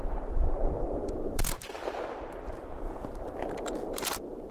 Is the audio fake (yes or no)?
yes